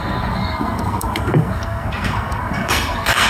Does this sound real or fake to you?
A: fake